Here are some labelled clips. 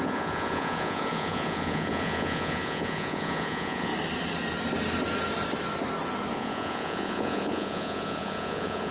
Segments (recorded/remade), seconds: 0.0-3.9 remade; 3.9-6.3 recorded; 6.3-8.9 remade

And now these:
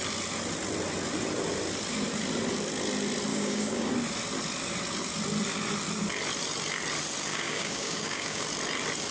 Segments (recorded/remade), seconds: 0.0-3.3 recorded; 3.3-3.9 remade; 3.9-7.3 recorded; 7.3-8.4 remade; 8.4-9.1 recorded